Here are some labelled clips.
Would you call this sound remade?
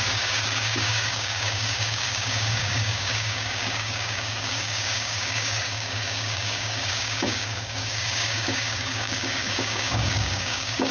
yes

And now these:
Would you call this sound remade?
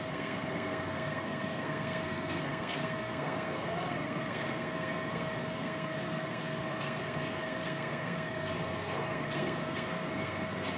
yes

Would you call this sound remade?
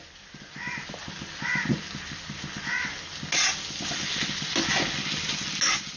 no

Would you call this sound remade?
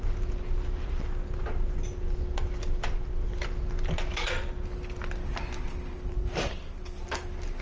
no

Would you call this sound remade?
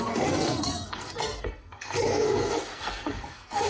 yes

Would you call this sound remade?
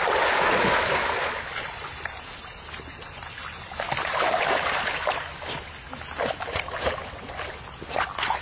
no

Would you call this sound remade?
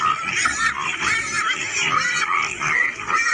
no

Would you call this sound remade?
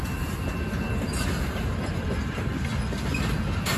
no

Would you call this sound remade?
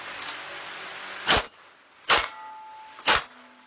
no